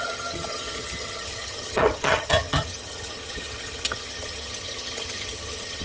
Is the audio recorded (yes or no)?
no